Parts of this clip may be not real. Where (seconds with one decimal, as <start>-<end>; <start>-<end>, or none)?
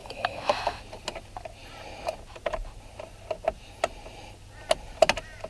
0.0-0.8